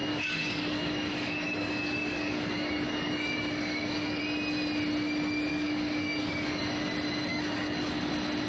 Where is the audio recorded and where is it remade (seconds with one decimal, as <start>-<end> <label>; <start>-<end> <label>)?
0.0-4.2 remade; 4.2-5.5 recorded; 5.5-6.6 remade; 6.6-7.3 recorded; 7.3-8.1 remade; 8.1-8.5 recorded